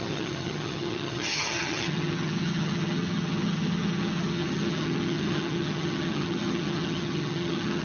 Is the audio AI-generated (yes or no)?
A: yes